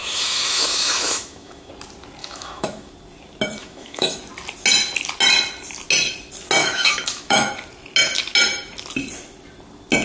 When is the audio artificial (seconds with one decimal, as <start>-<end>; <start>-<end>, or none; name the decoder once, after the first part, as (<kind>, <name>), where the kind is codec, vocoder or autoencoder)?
0.0-1.7 (autoencoder, DAC-VAE); 2.2-2.9; 3.6-4.2; 6.6-7.5